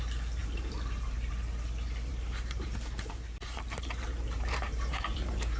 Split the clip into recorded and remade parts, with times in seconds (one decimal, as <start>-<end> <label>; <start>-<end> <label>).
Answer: 0.0-0.4 recorded; 0.4-1.3 remade; 1.3-2.1 recorded; 2.1-5.6 remade